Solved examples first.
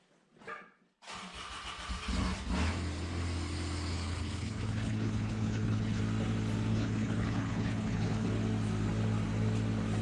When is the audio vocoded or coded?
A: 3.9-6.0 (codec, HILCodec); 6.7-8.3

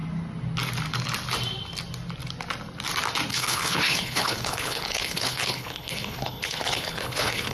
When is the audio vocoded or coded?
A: 3.3-7.5 (codec, HILCodec)